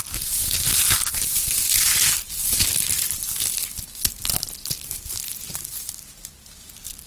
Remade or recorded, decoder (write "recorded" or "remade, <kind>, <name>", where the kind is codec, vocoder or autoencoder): recorded